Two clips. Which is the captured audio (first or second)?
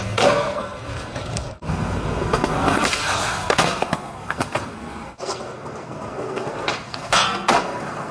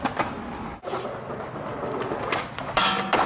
second